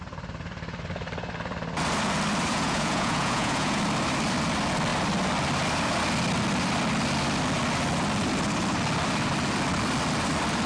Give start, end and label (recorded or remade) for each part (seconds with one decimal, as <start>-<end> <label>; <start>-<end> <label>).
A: 0.0-2.5 recorded; 2.5-3.8 remade; 3.8-10.7 recorded

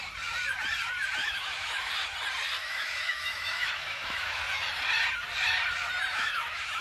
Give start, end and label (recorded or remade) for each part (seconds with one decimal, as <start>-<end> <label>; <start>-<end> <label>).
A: 0.0-1.2 recorded; 1.2-1.9 remade; 1.9-2.6 recorded; 2.6-4.4 remade; 4.4-6.1 recorded; 6.1-6.8 remade

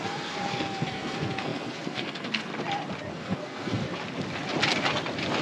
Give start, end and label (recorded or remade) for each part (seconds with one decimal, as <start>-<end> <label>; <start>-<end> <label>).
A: 0.0-2.5 remade; 2.5-3.1 recorded; 3.1-3.8 remade; 3.8-5.4 recorded

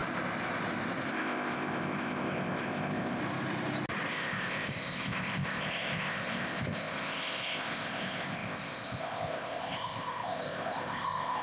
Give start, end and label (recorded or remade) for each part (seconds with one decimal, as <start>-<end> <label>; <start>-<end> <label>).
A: 0.0-1.1 recorded; 1.1-3.2 remade; 3.2-4.1 recorded; 4.1-11.4 remade